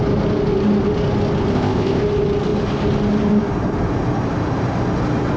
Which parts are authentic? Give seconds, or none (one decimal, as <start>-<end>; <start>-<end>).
0.0-1.5; 2.0-5.4